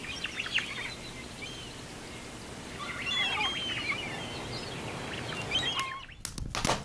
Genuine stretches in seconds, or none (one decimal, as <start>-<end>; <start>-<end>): 0.0-6.8